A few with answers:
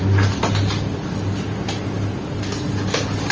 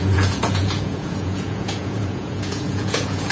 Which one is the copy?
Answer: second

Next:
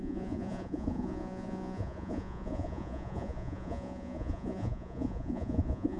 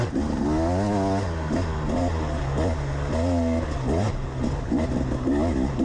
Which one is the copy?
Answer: first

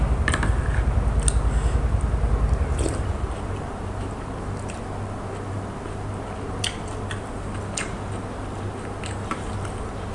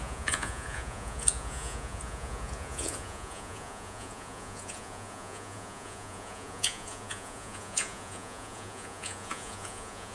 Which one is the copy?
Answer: second